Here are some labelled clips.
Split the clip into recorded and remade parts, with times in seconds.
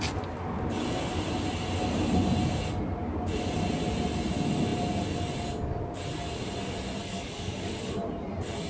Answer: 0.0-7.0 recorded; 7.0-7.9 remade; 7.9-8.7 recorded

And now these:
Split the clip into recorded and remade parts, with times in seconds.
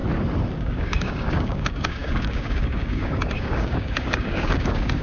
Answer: 0.0-0.6 recorded; 0.6-5.0 remade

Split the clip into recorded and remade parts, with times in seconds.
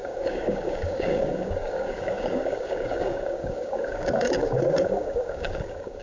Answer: 0.0-6.0 remade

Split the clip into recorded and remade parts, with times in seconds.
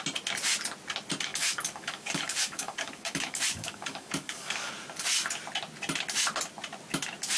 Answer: 0.0-1.3 recorded; 1.3-4.7 remade; 4.7-7.4 recorded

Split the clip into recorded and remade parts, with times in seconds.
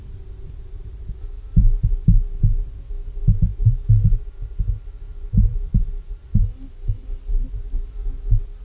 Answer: 0.0-3.5 recorded; 3.5-4.2 remade; 4.2-8.6 recorded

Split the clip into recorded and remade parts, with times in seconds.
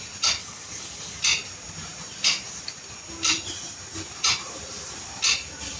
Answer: 0.0-0.4 recorded; 0.4-1.2 remade; 1.2-5.8 recorded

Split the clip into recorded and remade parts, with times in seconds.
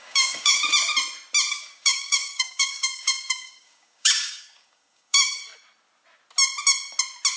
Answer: 0.0-0.6 remade; 0.6-1.5 recorded; 1.5-5.4 remade; 5.4-7.4 recorded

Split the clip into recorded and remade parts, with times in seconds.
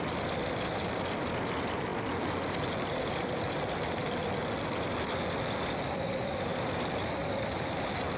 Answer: 0.0-8.2 recorded